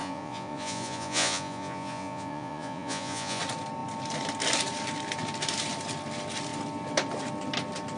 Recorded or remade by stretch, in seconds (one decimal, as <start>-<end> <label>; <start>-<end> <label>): 0.0-3.4 remade; 3.4-8.0 recorded

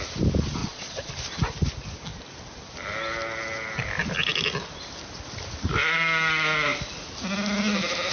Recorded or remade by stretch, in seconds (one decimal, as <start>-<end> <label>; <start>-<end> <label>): 0.0-0.6 recorded; 0.6-1.1 remade; 1.1-8.1 recorded

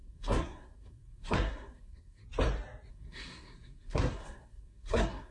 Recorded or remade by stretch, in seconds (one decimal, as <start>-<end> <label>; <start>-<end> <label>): 0.0-2.2 remade; 2.2-2.9 recorded; 2.9-5.3 remade

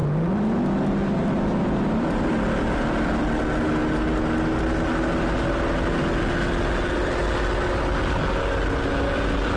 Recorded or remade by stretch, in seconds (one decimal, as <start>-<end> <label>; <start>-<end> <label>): 0.0-9.6 recorded

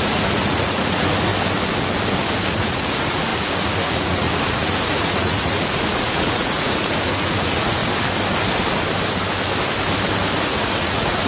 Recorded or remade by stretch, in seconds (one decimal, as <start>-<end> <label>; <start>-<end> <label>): 0.0-1.3 remade; 1.3-2.5 recorded; 2.5-7.8 remade; 7.8-10.4 recorded; 10.4-11.3 remade

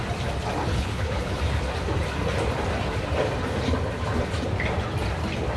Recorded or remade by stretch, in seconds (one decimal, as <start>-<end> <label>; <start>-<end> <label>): 0.0-0.7 recorded; 0.7-1.4 remade; 1.4-5.6 recorded

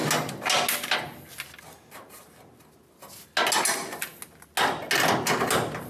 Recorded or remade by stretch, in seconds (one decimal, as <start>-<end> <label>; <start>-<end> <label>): 0.0-5.9 recorded

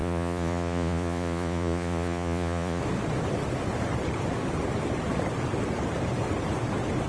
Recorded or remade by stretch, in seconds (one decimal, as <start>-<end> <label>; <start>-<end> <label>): 0.0-2.8 remade; 2.8-7.1 recorded